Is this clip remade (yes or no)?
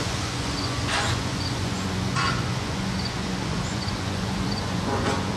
yes